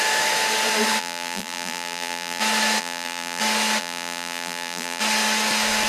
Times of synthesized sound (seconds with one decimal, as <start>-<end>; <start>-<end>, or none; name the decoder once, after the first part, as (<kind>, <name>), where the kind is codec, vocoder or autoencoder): 1.0-2.4 (vocoder, BigVGAN v2); 2.8-3.4; 3.8-5.0